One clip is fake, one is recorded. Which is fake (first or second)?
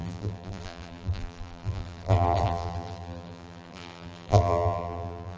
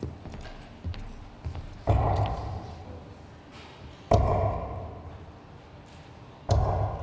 first